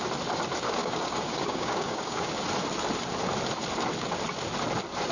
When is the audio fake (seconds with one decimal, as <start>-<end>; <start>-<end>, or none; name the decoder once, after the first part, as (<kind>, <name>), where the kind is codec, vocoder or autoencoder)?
0.8-2.4 (codec, DAC)